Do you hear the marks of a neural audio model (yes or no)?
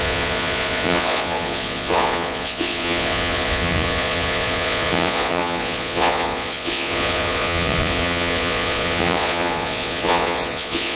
yes